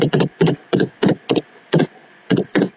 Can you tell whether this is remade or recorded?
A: remade